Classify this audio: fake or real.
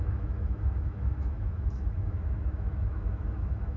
fake